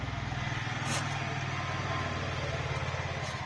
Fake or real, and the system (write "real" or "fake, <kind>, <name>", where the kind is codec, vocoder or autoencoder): real